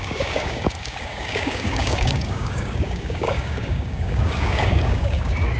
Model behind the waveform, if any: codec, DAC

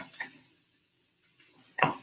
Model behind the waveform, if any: vocoder, WaveNeXt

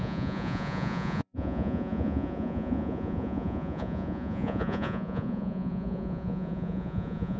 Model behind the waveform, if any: vocoder, Vocos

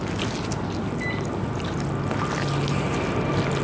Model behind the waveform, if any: none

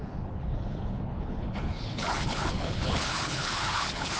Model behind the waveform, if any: codec, HILCodec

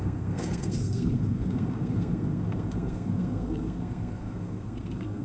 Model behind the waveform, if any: codec, SNAC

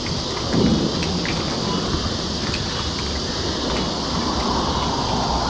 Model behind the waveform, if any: none